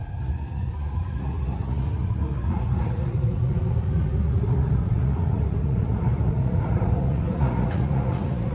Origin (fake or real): fake